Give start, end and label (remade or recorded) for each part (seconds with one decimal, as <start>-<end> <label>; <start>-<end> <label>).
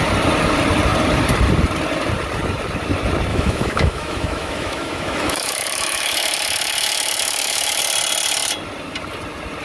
0.0-3.3 recorded; 3.3-7.8 remade; 7.8-9.6 recorded